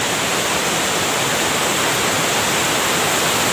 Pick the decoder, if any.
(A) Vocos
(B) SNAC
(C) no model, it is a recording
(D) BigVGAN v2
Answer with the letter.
C